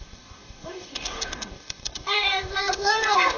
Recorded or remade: remade